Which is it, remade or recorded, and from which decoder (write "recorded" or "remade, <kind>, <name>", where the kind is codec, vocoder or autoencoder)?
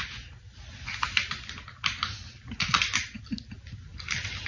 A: recorded